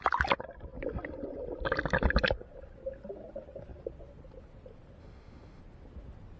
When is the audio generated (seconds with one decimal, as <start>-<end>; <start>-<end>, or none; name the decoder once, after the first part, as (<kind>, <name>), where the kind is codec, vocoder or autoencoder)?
5.0-5.6 (autoencoder, DAC-VAE)